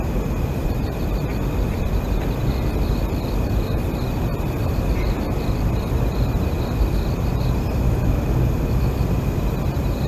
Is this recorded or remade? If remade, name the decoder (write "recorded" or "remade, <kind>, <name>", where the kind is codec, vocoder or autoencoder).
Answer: recorded